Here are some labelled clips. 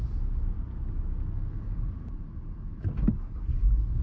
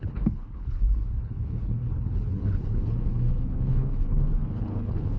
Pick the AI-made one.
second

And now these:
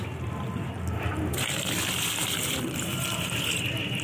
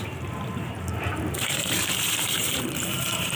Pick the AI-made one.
second